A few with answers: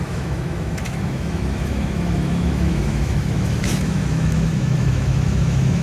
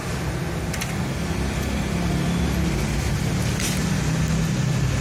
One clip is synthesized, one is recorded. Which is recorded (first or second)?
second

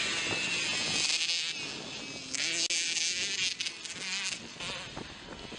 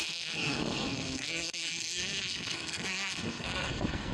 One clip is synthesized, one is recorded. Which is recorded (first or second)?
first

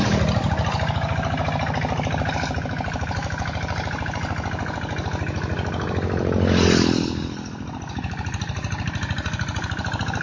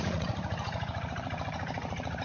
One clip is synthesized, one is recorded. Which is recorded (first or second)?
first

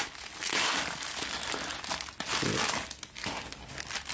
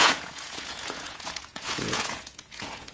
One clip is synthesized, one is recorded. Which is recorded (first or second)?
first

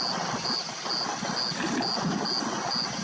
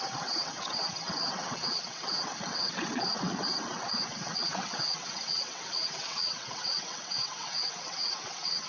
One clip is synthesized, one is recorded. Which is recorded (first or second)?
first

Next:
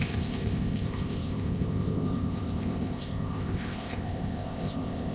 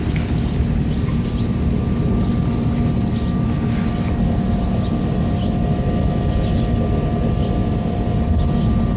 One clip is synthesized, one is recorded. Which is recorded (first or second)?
second